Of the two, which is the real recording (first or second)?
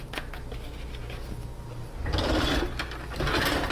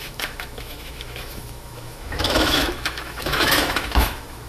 first